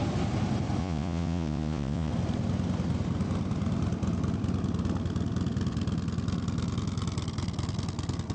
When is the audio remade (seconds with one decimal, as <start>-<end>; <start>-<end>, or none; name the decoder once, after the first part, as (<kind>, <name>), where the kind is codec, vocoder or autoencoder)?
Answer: 0.8-2.1 (vocoder, Vocos)